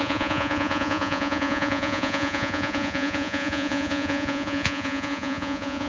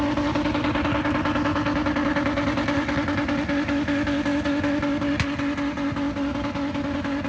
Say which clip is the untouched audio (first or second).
second